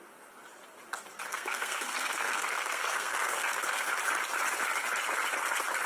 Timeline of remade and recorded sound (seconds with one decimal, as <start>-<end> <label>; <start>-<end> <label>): 0.0-1.3 recorded; 1.3-3.9 remade; 3.9-5.9 recorded